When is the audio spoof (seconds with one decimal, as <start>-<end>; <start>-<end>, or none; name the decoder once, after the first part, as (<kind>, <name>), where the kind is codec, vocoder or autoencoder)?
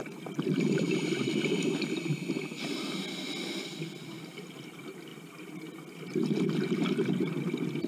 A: none